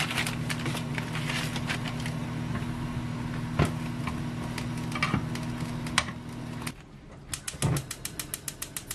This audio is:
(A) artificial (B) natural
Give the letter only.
B